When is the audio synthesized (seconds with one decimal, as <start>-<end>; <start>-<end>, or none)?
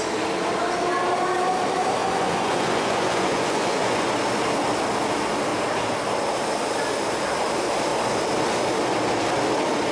2.0-4.1